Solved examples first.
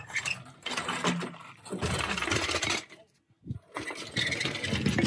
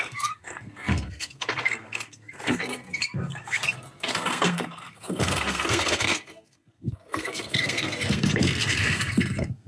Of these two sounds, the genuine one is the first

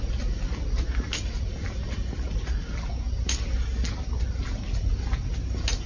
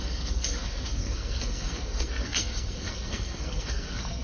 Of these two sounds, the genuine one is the first